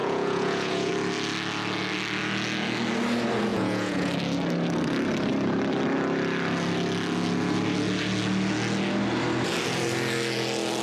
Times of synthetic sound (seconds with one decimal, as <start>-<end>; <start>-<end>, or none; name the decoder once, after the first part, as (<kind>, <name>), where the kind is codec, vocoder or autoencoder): 0.0-0.9 (vocoder, Vocos); 3.5-4.1